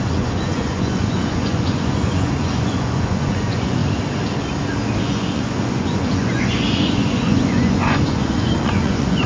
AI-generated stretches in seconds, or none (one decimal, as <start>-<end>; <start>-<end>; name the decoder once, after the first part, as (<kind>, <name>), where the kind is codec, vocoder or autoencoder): 0.0-3.8 (vocoder, Vocos); 5.0-9.3